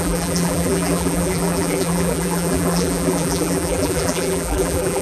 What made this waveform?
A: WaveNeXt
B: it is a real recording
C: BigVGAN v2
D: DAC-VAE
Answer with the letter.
C